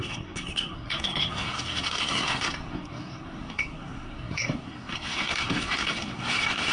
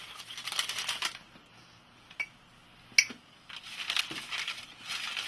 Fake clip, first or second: first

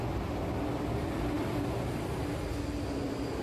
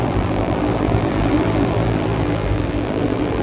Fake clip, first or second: second